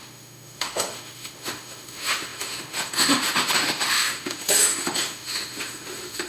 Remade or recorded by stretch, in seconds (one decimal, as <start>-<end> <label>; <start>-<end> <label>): 0.0-6.3 remade